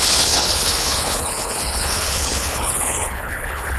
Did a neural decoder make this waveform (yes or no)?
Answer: yes